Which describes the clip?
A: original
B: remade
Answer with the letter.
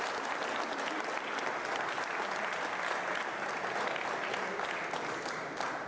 A